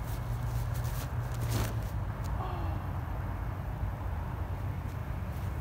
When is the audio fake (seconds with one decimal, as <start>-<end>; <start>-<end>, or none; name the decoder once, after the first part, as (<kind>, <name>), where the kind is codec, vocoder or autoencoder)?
none